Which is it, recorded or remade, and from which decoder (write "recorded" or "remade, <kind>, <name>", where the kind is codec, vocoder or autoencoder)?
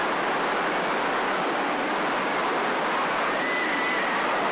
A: recorded